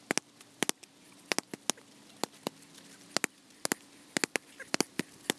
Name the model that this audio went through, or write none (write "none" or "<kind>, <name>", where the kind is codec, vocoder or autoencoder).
none